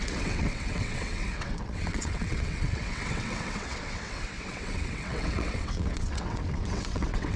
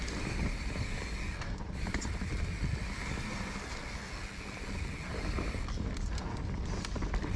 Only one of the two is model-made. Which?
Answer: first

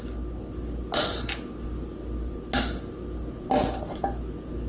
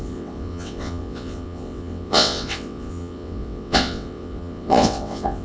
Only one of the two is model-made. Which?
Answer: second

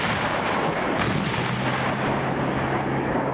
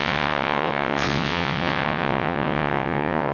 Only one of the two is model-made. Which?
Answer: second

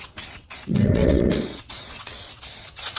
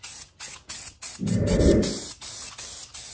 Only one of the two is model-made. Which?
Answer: first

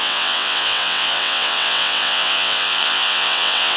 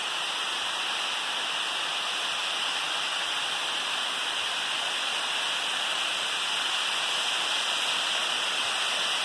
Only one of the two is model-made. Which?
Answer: first